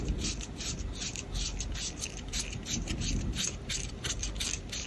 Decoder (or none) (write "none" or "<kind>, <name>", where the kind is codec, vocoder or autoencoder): vocoder, BigVGAN v2